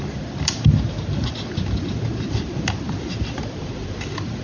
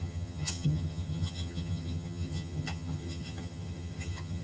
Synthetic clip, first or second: second